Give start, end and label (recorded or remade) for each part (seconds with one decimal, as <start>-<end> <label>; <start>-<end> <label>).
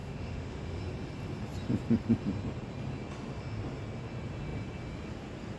0.0-0.8 remade; 0.8-5.6 recorded